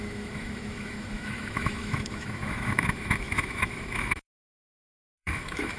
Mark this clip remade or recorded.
remade